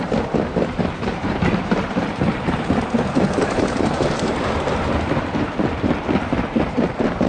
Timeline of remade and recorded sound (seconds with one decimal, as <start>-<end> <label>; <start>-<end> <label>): 0.0-1.1 recorded; 1.1-5.5 remade; 5.5-7.3 recorded